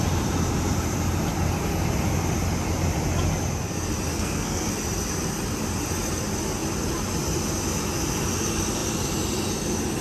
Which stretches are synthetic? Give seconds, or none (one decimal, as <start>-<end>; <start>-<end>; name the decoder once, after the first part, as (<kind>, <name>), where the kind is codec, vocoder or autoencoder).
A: 4.1-4.7 (codec, SNAC)

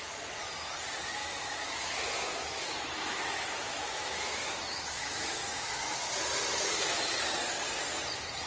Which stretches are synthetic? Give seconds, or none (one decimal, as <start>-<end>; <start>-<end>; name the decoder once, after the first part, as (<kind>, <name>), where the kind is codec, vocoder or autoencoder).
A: 1.2-6.1 (autoencoder, DAC-VAE)

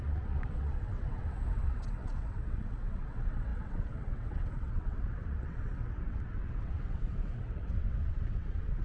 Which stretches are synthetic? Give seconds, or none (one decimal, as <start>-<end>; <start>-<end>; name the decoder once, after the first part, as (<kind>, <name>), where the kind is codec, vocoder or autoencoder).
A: 0.0-8.8 (vocoder, WaveNeXt)

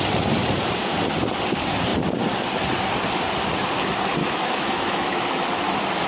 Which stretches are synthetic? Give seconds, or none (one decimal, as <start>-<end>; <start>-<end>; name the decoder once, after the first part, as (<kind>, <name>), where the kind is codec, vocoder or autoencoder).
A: 4.2-5.6 (autoencoder, DAC-VAE)

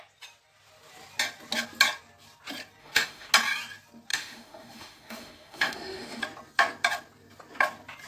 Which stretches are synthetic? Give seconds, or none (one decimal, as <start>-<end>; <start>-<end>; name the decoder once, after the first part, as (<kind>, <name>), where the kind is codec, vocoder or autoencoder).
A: 2.8-3.3 (autoencoder, DAC-VAE); 4.1-6.2

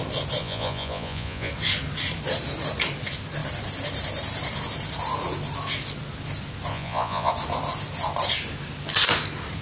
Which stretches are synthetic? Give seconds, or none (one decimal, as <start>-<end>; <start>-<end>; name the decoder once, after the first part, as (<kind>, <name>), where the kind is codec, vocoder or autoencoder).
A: 0.4-1.5 (vocoder, Vocos); 6.7-7.3